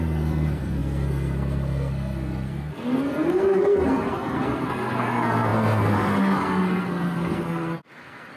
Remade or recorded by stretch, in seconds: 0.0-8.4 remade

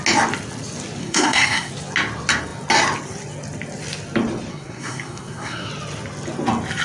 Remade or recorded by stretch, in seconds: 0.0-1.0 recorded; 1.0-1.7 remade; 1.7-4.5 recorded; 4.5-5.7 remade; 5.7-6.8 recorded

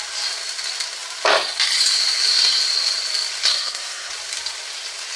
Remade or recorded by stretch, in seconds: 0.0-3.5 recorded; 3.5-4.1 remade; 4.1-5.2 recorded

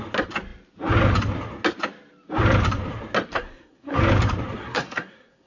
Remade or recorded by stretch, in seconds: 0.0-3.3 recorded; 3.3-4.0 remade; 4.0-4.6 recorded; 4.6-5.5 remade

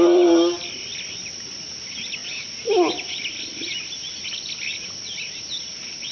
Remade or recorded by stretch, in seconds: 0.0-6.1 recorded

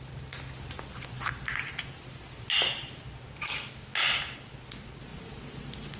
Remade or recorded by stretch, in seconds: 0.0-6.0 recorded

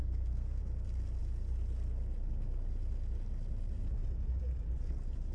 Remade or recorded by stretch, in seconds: 0.0-0.6 remade; 0.6-5.3 recorded

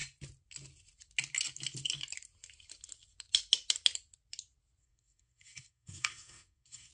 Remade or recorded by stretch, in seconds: 0.0-4.8 recorded; 4.8-6.9 remade